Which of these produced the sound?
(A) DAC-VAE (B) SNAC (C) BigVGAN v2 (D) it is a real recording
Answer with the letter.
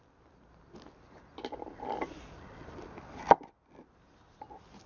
D